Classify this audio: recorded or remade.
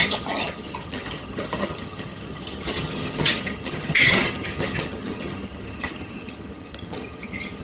remade